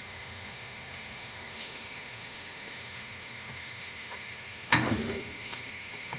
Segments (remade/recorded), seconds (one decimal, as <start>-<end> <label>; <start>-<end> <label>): 0.0-6.2 remade